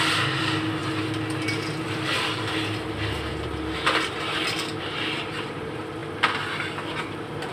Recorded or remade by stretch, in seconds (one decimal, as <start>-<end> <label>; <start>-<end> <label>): 0.0-7.5 recorded